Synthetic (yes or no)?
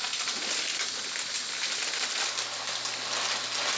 no